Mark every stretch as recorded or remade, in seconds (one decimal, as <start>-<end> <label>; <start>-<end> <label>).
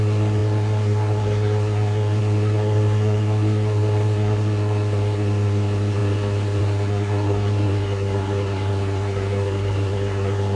0.0-10.6 remade